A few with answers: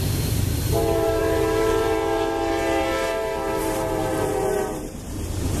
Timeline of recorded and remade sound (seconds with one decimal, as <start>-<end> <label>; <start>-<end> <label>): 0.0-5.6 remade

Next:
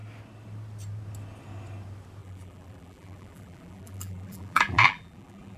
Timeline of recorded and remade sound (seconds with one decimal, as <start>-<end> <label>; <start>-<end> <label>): 0.0-2.2 recorded; 2.2-5.6 remade

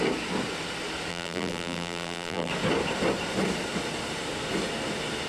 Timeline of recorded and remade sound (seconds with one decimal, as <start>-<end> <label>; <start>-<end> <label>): 0.0-1.1 recorded; 1.1-2.5 remade; 2.5-5.3 recorded

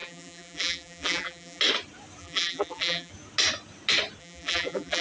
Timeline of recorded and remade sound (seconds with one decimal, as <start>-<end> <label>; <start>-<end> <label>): 0.0-1.6 remade; 1.6-2.2 recorded; 2.2-3.1 remade; 3.1-4.2 recorded; 4.2-5.0 remade

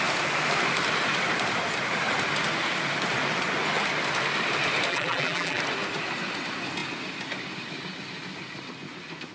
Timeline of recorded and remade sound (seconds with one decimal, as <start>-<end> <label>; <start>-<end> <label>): 0.0-4.9 recorded; 4.9-5.6 remade; 5.6-9.3 recorded